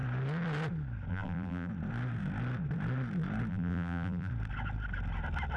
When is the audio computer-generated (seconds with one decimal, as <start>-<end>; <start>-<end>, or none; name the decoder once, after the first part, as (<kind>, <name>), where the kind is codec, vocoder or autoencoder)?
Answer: 1.1-1.7 (vocoder, BigVGAN v2); 3.5-4.3